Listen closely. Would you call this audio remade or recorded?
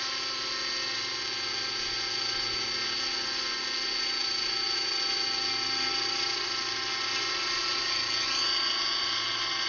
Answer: recorded